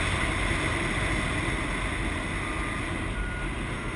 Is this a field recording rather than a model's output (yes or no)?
yes